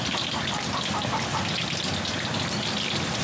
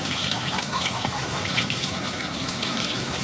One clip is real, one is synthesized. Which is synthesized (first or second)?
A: second